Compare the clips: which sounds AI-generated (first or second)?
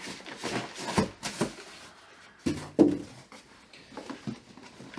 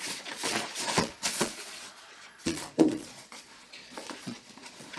second